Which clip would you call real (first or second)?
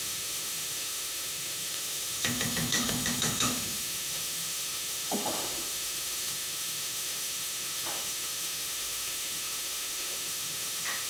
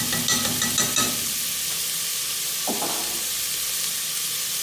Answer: second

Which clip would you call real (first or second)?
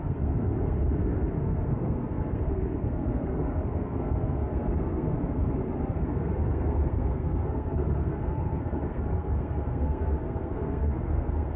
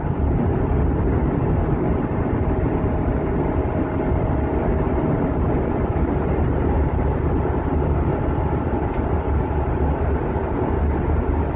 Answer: second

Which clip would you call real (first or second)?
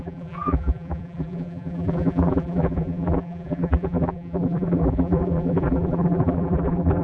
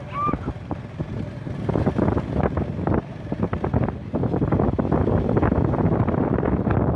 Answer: second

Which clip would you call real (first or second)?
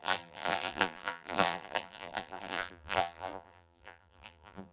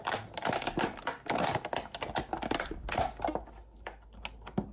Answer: second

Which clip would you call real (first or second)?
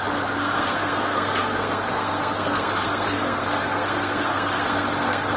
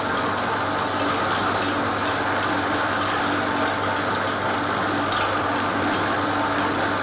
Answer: second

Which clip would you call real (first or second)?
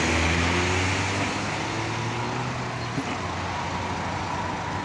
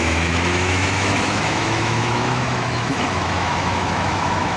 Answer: first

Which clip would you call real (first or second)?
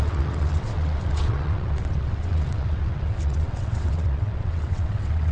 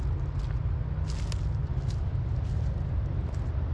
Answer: second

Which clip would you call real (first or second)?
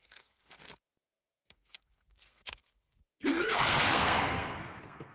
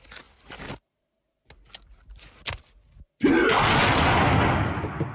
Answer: second